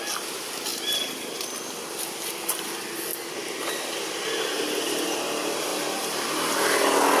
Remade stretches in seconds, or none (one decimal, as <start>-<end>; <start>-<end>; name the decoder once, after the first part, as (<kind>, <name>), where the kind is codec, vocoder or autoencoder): none